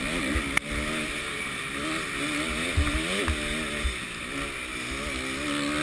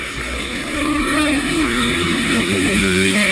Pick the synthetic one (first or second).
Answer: second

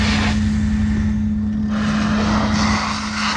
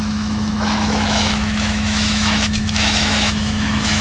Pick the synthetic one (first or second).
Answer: second